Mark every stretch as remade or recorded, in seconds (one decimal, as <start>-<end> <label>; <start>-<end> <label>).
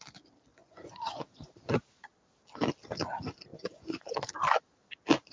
0.0-0.5 recorded; 0.5-1.5 remade; 1.5-3.5 recorded; 3.5-4.1 remade; 4.1-5.3 recorded